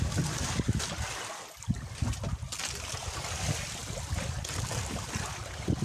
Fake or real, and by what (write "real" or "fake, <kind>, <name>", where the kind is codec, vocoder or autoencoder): real